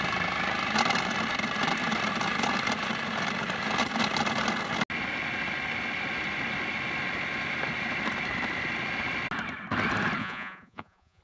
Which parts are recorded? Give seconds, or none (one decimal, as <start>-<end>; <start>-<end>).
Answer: 0.0-10.2